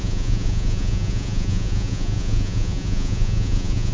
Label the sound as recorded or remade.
remade